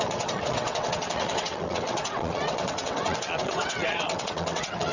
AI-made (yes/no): yes